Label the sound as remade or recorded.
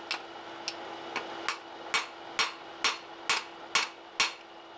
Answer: recorded